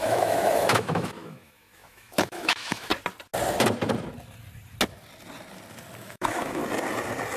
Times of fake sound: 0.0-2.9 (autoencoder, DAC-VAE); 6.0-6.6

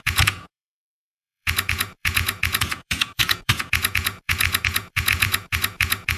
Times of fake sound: 0.0-6.2 (vocoder, Vocos)

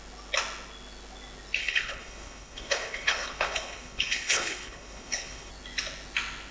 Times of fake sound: 1.6-5.5 (codec, HILCodec)